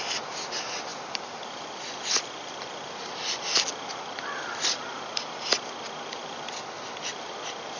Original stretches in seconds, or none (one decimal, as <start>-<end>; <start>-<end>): 0.0-0.9; 2.9-7.8